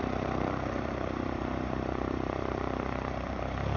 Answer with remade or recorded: remade